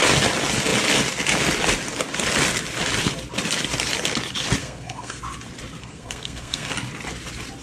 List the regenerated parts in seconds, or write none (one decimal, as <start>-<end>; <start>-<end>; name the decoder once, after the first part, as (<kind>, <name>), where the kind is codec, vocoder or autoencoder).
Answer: 4.6-5.2 (codec, SNAC); 5.8-6.7